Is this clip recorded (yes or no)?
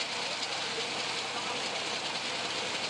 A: yes